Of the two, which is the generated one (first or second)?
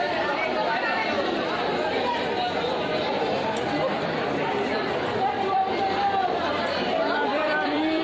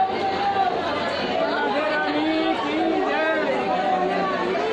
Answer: first